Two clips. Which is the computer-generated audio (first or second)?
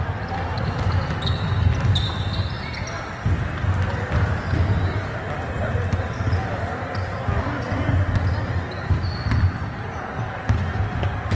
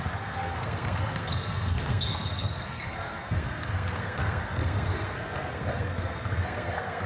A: second